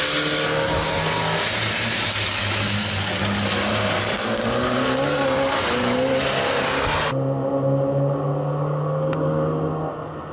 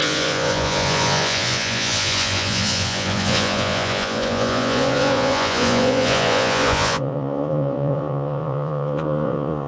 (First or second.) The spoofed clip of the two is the second